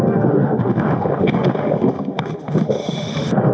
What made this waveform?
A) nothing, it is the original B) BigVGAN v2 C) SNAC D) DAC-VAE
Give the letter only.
D